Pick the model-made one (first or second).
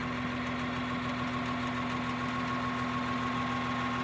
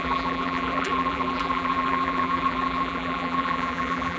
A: second